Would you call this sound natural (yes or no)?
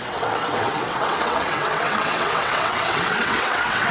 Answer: no